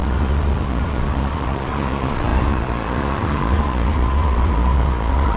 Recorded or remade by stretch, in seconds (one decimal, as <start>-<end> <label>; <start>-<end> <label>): 0.0-5.4 remade